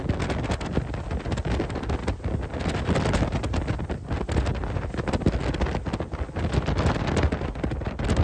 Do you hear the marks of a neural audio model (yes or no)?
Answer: no